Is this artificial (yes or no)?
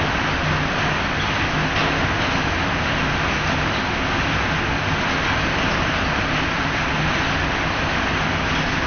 no